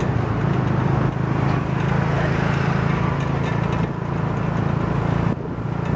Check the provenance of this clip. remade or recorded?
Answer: recorded